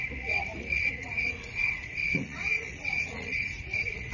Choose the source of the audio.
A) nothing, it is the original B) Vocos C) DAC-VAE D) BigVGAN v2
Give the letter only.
B